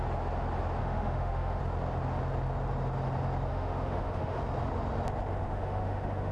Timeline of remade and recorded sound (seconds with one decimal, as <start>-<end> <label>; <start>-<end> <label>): 0.0-0.8 recorded; 0.8-1.6 remade; 1.6-3.5 recorded; 3.5-4.4 remade; 4.4-5.4 recorded; 5.4-6.3 remade